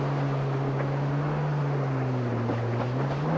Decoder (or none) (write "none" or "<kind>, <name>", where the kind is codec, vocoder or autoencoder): none